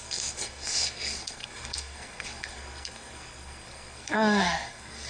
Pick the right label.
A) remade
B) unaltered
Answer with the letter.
A